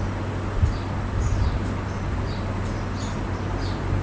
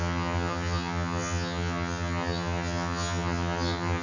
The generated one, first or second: second